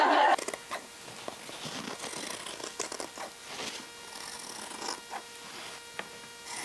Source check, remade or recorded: recorded